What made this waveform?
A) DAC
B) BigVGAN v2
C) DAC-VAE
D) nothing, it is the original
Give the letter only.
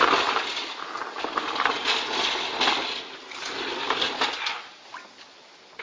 D